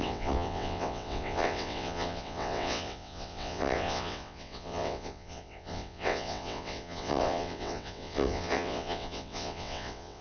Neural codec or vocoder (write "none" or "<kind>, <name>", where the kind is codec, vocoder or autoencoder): vocoder, WaveNeXt